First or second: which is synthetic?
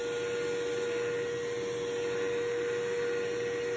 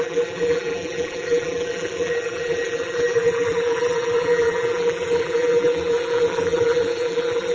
second